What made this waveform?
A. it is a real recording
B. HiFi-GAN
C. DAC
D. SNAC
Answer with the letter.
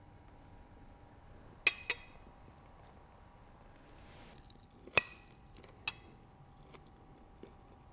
A